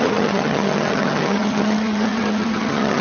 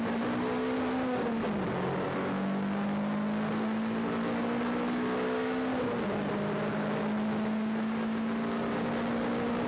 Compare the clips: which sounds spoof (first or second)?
first